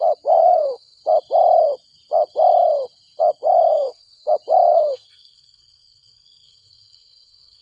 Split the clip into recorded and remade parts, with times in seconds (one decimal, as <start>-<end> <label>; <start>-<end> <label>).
0.0-0.4 recorded; 0.4-1.0 remade; 1.0-3.7 recorded; 3.7-4.3 remade; 4.3-4.7 recorded; 4.7-7.6 remade